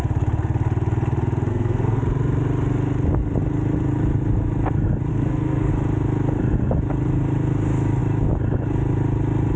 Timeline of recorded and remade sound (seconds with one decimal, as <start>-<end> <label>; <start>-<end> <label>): 0.0-1.5 recorded; 1.5-2.0 remade; 2.0-5.1 recorded; 5.1-5.7 remade; 5.7-9.6 recorded